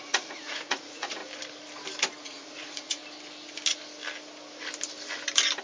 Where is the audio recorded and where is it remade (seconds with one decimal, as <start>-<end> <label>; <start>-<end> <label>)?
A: 0.0-1.2 remade; 1.2-2.2 recorded; 2.2-3.0 remade; 3.0-5.6 recorded